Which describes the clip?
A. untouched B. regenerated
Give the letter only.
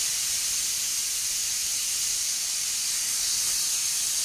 A